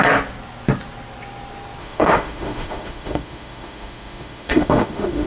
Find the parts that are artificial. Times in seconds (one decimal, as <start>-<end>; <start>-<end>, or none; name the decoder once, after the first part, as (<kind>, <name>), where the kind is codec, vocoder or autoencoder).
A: 1.8-5.3 (autoencoder, DAC-VAE)